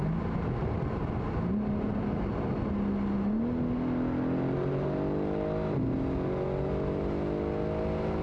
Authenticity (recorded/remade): recorded